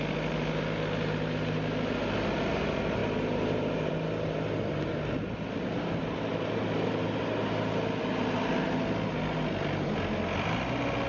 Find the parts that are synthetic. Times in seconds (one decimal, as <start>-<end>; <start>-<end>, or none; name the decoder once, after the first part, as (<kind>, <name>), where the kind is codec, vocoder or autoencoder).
none